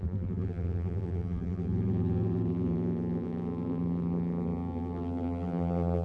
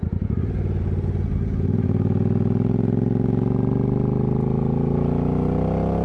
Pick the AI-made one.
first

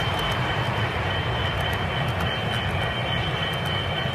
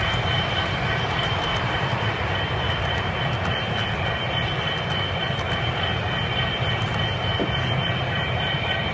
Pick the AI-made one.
second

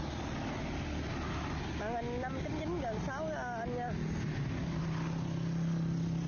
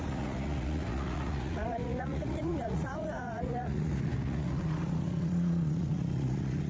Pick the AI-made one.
second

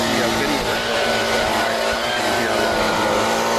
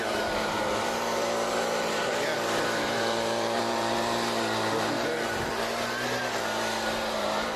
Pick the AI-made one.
second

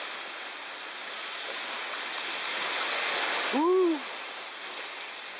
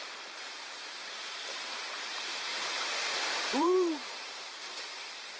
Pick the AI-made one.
second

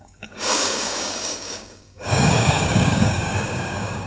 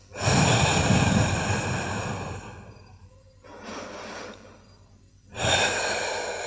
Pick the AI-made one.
first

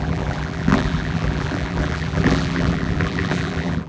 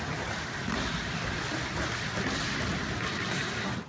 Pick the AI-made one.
first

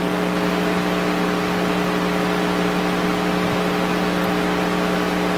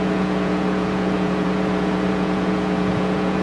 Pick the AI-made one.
second